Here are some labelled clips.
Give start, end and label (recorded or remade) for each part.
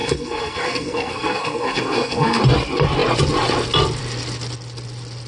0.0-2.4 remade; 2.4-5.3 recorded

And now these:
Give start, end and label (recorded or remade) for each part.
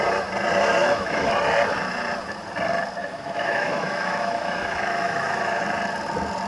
0.0-0.8 recorded; 0.8-1.3 remade; 1.3-3.0 recorded; 3.0-5.6 remade; 5.6-6.5 recorded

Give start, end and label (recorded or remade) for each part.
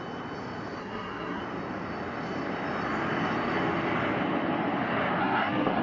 0.0-0.8 recorded; 0.8-1.4 remade; 1.4-5.2 recorded; 5.2-5.8 remade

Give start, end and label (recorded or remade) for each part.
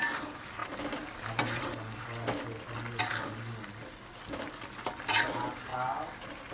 0.0-6.5 recorded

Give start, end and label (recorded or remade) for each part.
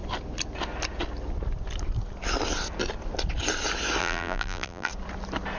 0.0-4.0 recorded; 4.0-4.9 remade; 4.9-5.6 recorded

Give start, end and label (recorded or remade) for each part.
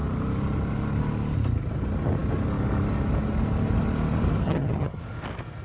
0.0-4.4 recorded; 4.4-5.0 remade; 5.0-5.6 recorded